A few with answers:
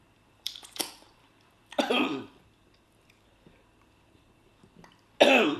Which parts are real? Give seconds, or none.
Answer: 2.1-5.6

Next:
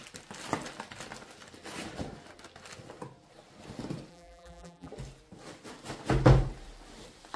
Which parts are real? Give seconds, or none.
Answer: 0.0-4.1; 4.9-7.4

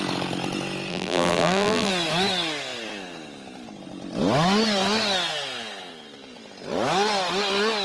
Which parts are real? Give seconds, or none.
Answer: 0.0-0.9; 1.9-7.8